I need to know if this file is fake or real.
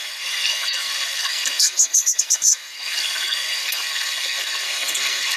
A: fake